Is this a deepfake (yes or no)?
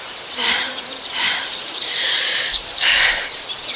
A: yes